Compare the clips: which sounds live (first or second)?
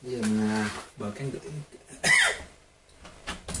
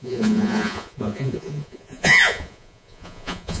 first